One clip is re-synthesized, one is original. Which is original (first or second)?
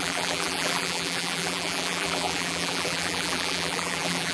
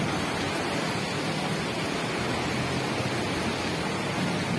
second